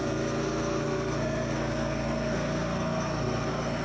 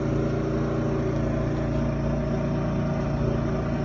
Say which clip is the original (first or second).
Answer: second